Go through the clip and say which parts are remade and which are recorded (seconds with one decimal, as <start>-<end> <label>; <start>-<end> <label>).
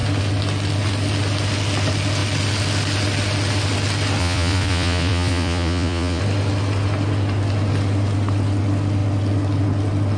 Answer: 0.0-4.2 recorded; 4.2-6.2 remade; 6.2-10.2 recorded